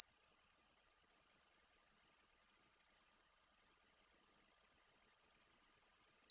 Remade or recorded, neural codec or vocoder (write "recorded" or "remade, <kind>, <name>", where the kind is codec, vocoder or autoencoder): remade, vocoder, BigVGAN v2